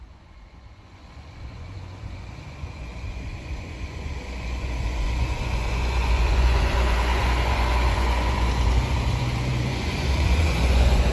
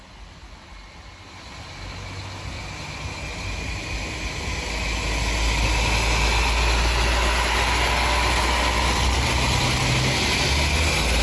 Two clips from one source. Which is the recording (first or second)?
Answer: second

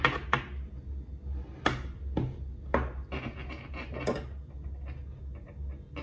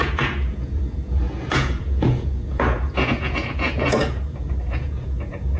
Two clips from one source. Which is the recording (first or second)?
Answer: first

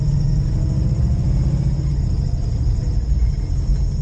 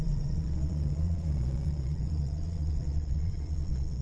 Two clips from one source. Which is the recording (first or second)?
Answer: first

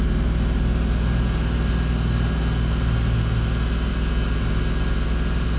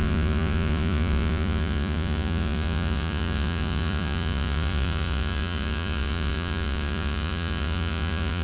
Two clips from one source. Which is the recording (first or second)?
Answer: first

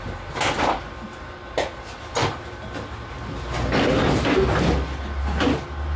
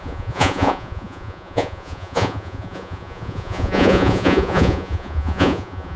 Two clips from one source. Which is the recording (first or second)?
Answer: first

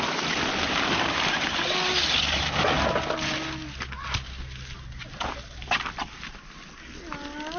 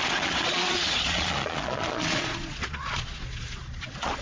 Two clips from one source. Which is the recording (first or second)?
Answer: first